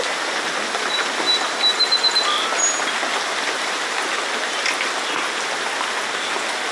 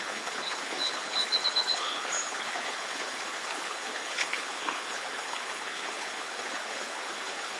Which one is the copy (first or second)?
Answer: second